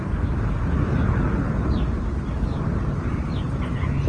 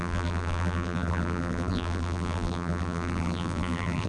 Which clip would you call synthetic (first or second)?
second